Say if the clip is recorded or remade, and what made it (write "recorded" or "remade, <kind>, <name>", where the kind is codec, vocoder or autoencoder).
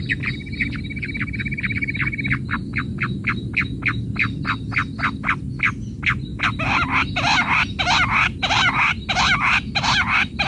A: recorded